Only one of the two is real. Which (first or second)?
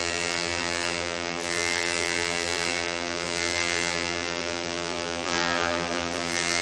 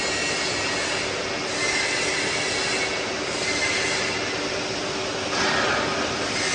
second